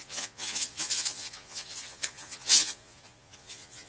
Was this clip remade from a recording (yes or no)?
yes